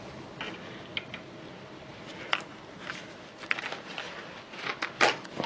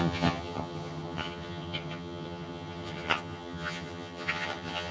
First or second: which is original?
first